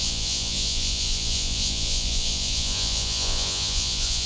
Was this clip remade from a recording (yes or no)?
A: yes